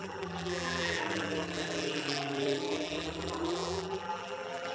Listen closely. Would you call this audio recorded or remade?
remade